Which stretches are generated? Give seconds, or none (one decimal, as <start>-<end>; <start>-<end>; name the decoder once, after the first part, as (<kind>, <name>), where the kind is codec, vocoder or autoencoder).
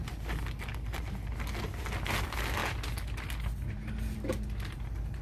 none